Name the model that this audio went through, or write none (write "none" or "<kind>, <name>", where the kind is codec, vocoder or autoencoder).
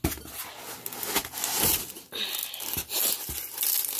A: none